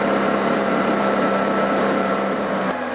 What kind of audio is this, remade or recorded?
remade